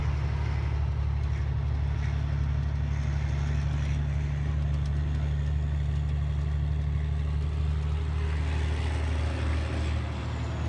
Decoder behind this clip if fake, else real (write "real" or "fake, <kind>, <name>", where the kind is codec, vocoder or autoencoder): real